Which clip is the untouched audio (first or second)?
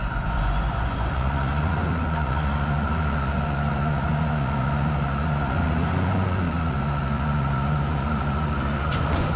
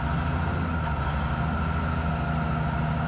second